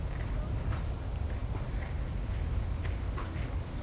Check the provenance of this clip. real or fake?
real